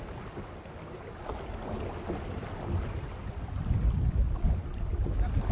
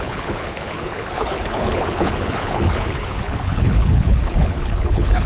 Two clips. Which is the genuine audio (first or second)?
first